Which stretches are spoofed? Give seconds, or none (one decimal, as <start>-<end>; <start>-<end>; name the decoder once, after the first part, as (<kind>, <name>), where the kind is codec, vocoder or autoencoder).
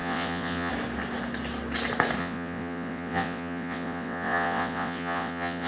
0.0-0.7 (vocoder, WaveNeXt); 2.2-5.7